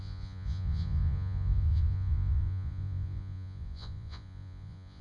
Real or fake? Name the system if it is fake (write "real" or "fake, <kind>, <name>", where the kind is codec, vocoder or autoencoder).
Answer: fake, vocoder, Vocos